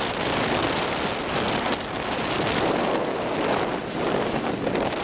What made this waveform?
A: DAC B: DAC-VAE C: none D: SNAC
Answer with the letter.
C